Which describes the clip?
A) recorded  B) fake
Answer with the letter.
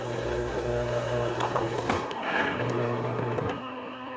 B